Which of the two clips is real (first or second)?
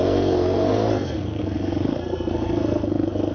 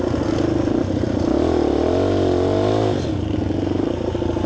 second